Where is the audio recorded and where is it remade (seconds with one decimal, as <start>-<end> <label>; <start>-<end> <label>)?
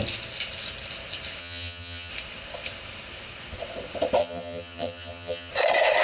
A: 0.0-1.4 recorded; 1.4-2.1 remade; 2.1-4.2 recorded; 4.2-5.5 remade; 5.5-6.0 recorded